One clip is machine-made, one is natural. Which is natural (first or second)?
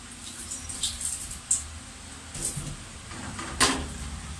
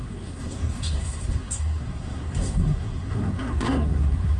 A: first